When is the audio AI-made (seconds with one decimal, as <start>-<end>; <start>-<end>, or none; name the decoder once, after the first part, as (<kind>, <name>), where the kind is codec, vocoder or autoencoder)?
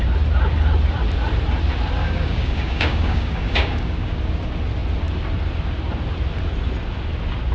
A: 2.0-4.2 (codec, DAC)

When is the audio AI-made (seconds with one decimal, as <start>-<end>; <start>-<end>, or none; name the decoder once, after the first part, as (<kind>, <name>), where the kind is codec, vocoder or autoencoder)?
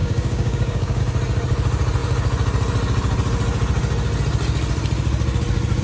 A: 0.0-1.0 (codec, DAC)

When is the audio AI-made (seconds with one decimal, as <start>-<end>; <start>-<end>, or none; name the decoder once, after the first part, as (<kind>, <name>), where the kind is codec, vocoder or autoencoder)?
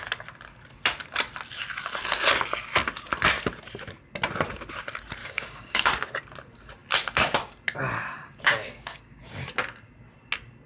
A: 5.2-5.9 (codec, DAC); 8.2-9.5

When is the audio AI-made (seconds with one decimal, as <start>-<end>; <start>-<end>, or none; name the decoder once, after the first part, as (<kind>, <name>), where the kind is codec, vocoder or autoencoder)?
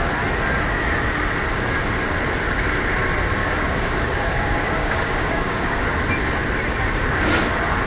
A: 3.4-5.8 (codec, DAC); 6.7-7.3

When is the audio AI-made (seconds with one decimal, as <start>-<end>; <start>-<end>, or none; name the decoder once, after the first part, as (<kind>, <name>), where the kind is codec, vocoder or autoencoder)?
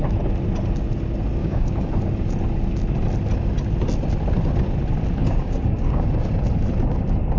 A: 1.4-1.9 (codec, DAC); 5.2-6.3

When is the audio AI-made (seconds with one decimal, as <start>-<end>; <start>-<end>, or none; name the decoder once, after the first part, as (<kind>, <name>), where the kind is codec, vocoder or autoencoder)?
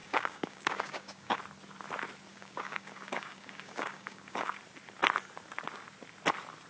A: 0.0-1.4 (codec, DAC); 2.3-4.6